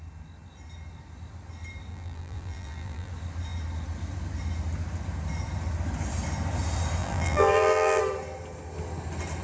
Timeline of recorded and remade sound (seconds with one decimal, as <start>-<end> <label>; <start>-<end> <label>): 0.0-1.9 recorded; 1.9-3.1 remade; 3.1-7.0 recorded; 7.0-8.0 remade; 8.0-9.4 recorded